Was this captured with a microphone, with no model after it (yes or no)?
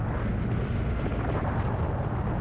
yes